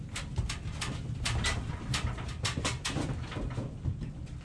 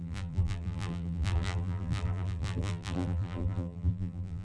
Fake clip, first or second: second